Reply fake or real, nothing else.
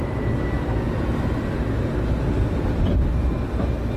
real